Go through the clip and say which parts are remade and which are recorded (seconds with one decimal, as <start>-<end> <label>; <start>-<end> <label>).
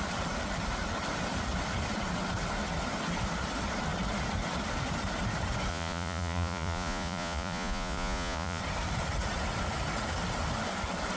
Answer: 0.0-5.7 recorded; 5.7-8.6 remade; 8.6-11.2 recorded